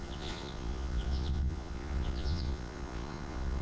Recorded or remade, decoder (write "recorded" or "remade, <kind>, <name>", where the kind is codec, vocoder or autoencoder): remade, vocoder, Vocos